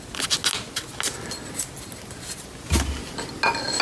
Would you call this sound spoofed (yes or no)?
no